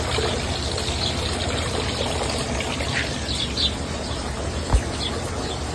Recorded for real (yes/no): yes